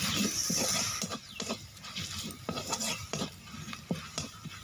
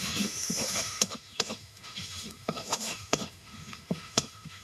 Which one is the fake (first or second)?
second